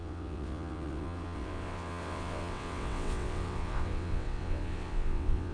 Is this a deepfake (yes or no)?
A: yes